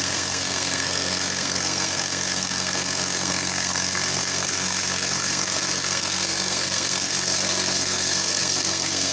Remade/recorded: remade